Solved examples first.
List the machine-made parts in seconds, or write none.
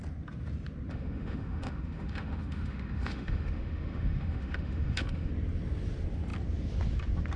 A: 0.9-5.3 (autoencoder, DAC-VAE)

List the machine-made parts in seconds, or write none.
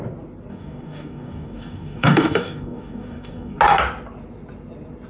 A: 0.5-3.6 (codec, DAC)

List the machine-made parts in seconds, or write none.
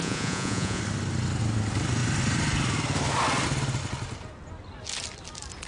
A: 0.0-0.8 (vocoder, Vocos)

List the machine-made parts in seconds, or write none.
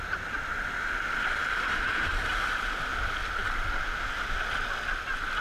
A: 1.4-1.9 (vocoder, BigVGAN v2)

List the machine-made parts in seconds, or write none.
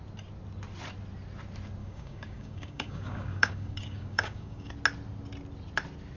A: 1.8-4.7 (codec, DAC)